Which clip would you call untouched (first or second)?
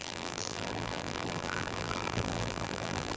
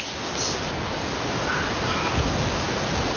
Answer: second